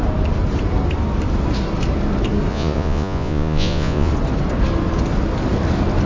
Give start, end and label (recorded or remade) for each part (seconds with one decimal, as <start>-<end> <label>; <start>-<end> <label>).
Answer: 0.0-2.5 recorded; 2.5-4.1 remade; 4.1-6.1 recorded